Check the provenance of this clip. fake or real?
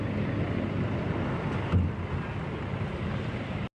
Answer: real